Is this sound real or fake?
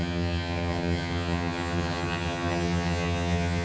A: fake